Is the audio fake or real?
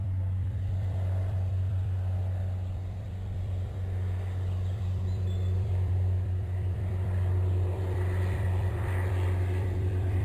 fake